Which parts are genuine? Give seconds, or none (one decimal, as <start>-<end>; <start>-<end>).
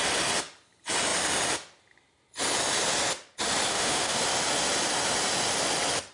0.0-3.7; 4.2-6.1